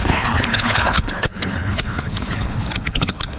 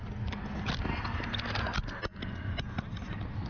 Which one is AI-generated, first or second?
first